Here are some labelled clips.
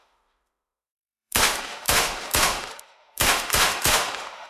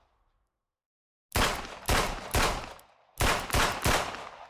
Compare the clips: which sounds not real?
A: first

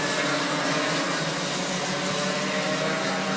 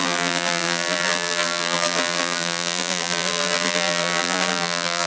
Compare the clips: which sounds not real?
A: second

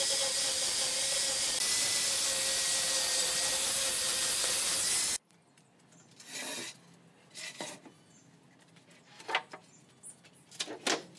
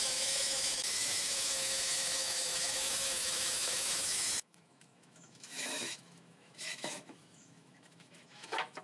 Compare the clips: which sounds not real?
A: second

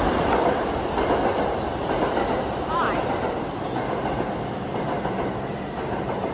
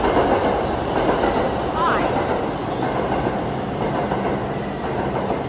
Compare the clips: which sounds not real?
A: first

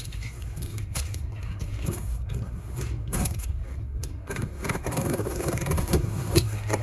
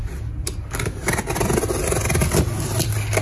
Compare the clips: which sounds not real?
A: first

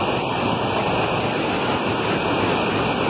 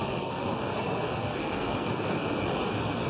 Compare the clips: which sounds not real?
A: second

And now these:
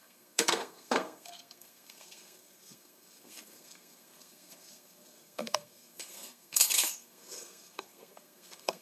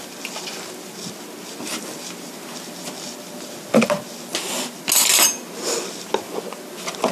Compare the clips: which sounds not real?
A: first